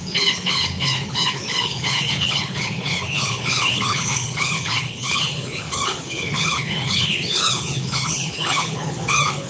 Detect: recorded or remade remade